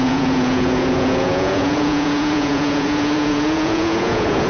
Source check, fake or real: fake